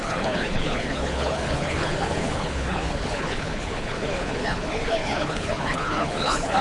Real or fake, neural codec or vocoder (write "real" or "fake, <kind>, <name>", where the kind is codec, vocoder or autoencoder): fake, codec, HILCodec